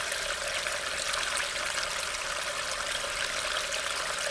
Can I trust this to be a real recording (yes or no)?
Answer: yes